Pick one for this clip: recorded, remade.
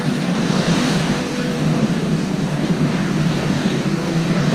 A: remade